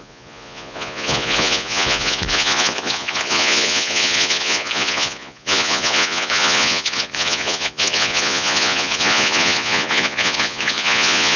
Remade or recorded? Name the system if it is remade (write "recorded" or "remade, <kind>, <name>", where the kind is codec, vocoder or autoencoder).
remade, vocoder, Vocos